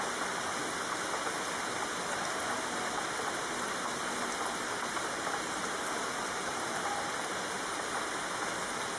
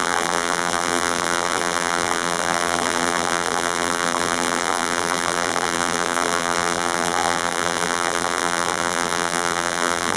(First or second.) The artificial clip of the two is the second